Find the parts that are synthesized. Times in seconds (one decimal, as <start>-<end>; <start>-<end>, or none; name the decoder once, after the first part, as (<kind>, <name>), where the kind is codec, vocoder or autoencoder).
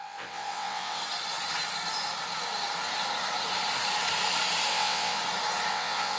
0.0-1.0 (vocoder, WaveNeXt); 4.7-5.2; 5.7-6.2